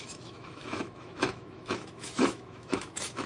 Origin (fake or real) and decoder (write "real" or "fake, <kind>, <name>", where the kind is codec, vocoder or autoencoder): fake, autoencoder, DAC-VAE